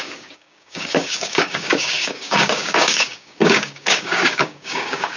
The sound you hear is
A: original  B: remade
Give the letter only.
B